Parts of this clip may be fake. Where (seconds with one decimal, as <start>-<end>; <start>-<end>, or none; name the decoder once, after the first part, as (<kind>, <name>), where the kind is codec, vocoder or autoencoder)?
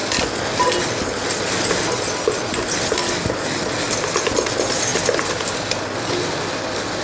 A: none